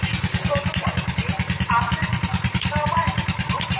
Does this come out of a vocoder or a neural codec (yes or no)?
no